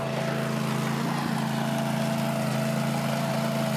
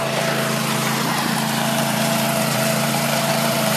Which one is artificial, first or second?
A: second